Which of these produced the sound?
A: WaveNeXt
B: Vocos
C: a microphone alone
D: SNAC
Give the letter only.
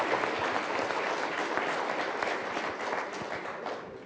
C